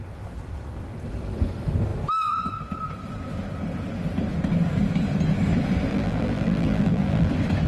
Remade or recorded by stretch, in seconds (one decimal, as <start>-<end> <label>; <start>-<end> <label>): 0.0-5.9 recorded; 5.9-7.3 remade; 7.3-7.7 recorded